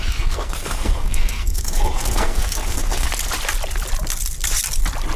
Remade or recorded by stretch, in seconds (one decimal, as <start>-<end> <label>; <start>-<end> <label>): 0.0-3.1 remade; 3.1-5.2 recorded